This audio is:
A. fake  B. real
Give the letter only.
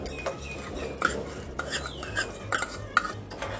B